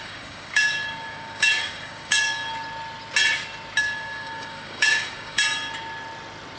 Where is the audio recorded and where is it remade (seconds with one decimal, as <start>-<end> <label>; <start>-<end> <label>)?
0.0-2.4 remade; 2.4-3.8 recorded; 3.8-5.4 remade; 5.4-6.6 recorded